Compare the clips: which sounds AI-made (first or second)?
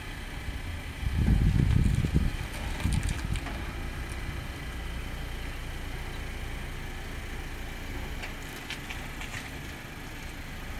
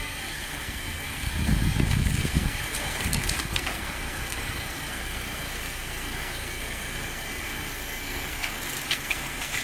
second